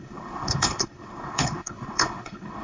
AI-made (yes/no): yes